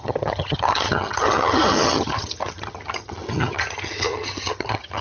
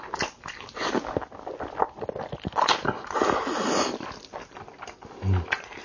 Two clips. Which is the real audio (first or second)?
second